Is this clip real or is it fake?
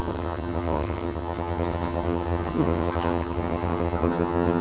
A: fake